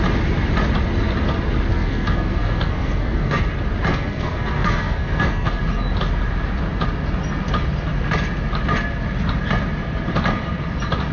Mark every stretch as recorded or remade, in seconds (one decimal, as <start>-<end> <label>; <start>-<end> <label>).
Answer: 0.0-1.7 recorded; 1.7-3.5 remade; 3.5-3.9 recorded; 3.9-5.6 remade; 5.6-11.1 recorded